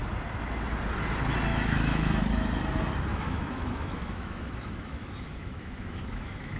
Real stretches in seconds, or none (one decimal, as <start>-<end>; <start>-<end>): 0.0-1.5; 2.2-3.1